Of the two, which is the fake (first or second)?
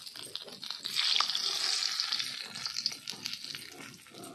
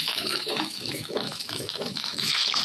second